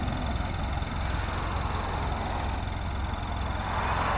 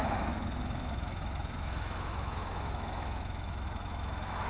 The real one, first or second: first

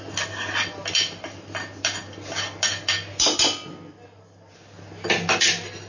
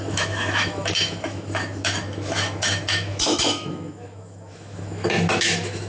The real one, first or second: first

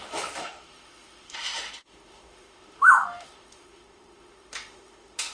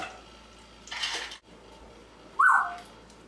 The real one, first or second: second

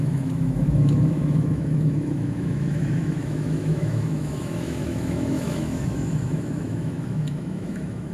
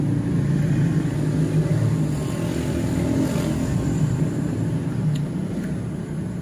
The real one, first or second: second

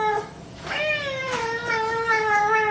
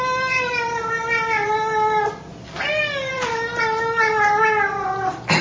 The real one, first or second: second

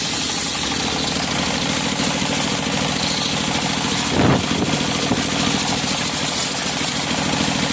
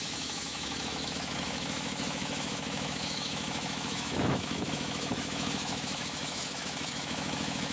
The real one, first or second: first